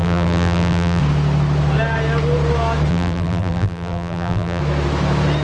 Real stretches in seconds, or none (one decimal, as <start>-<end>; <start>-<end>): 1.0-2.9; 4.6-5.4